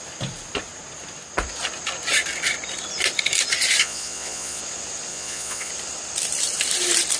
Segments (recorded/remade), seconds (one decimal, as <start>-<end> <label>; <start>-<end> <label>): 0.0-3.8 recorded; 3.8-4.6 remade; 4.6-5.1 recorded; 5.1-5.7 remade; 5.7-7.2 recorded